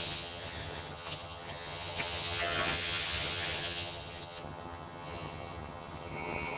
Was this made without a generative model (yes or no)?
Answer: no